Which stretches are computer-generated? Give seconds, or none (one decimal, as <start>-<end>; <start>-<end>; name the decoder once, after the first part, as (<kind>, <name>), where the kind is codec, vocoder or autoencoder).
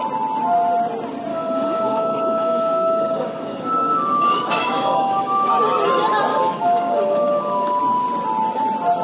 1.3-5.5 (codec, DAC); 6.3-7.8